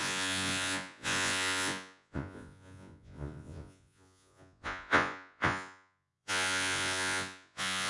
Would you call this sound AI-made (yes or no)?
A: yes